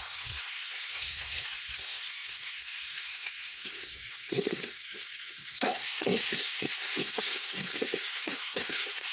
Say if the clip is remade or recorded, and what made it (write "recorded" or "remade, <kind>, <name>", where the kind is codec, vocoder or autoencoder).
remade, codec, SNAC